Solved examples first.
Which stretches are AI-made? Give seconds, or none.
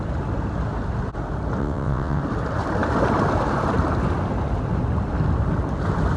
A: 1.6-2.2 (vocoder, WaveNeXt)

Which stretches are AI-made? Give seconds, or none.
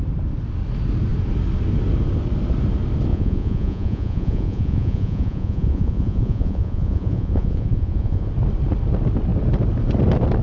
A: 3.1-8.3 (vocoder, Vocos)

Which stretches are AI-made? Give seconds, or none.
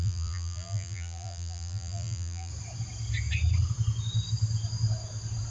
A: 0.0-2.5 (vocoder, BigVGAN v2)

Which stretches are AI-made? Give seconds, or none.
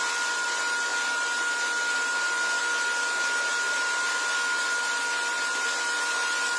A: none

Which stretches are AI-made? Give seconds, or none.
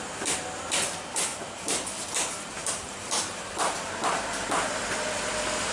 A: 1.3-1.9 (vocoder, BigVGAN v2); 2.6-4.8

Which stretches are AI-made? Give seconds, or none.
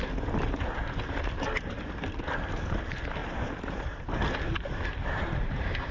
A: 3.2-5.9 (vocoder, BigVGAN v2)